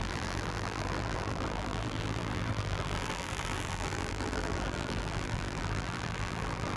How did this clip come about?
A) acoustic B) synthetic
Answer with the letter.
B